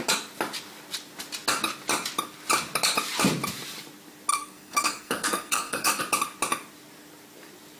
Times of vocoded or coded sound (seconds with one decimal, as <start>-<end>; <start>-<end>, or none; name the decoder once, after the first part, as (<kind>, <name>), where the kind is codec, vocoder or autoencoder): 4.3-6.0 (codec, SNAC)

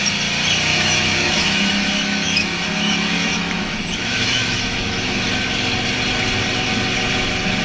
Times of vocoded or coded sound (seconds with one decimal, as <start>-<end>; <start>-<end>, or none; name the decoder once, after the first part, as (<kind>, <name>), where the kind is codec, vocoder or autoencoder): 0.7-5.3 (autoencoder, DAC-VAE)

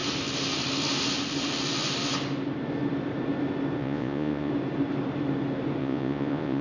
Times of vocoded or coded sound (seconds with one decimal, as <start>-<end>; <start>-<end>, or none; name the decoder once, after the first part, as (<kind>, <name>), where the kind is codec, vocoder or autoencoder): 3.8-4.5 (vocoder, Vocos); 5.8-6.6

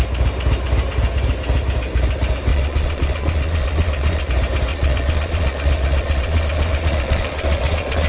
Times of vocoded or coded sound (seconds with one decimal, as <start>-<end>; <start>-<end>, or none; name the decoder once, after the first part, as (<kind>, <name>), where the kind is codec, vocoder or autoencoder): 2.5-4.3 (vocoder, Vocos); 4.7-8.1

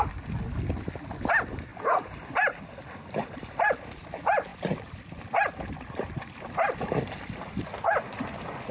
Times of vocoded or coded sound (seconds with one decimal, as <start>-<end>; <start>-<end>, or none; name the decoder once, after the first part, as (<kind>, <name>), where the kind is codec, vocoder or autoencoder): 1.7-3.8 (vocoder, BigVGAN v2); 4.5-8.0

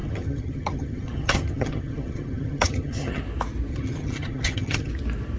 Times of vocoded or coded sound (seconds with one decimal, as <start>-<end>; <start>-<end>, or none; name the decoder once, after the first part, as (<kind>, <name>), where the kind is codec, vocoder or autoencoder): 0.0-3.2 (vocoder, HiFi-GAN); 3.7-4.9

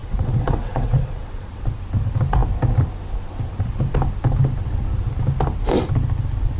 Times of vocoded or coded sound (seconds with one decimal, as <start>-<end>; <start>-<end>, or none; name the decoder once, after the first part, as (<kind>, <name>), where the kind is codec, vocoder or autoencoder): 0.0-1.6 (vocoder, WaveNeXt)

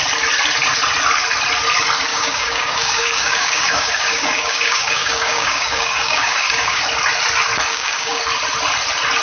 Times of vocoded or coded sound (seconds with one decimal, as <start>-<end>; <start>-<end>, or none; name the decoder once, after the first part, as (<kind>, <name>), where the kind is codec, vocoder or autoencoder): 2.1-6.8 (codec, DAC); 7.7-8.2